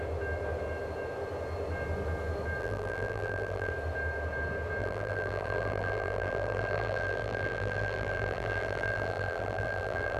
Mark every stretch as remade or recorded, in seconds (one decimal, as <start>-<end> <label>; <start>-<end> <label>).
0.0-2.6 recorded; 2.6-3.7 remade; 3.7-4.8 recorded; 4.8-10.2 remade